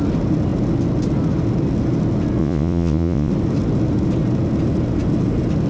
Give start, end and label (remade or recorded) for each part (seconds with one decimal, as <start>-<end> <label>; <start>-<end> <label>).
0.0-2.4 recorded; 2.4-3.3 remade; 3.3-5.7 recorded